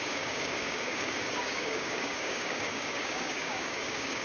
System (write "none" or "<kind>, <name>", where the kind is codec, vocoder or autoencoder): codec, DAC